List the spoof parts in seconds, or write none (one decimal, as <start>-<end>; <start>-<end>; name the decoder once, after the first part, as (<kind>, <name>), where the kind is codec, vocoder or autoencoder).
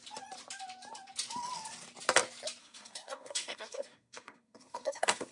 2.6-5.3 (codec, SNAC)